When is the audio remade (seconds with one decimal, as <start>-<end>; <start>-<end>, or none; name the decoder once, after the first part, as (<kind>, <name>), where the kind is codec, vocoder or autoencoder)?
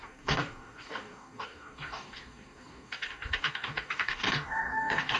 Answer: 0.0-5.2 (codec, DAC)